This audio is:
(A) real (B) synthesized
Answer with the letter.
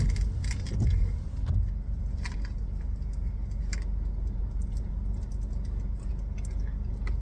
A